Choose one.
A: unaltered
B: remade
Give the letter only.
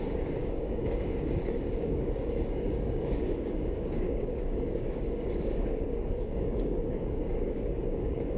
B